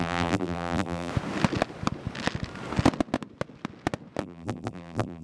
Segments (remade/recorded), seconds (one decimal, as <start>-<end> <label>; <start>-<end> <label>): 0.0-1.1 remade; 1.1-4.2 recorded; 4.2-5.2 remade